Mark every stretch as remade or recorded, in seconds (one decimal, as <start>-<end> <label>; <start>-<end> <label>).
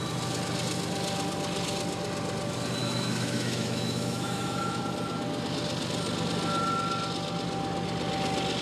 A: 0.0-2.8 recorded; 2.8-4.8 remade; 4.8-8.6 recorded